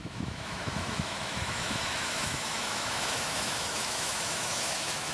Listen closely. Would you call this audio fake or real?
fake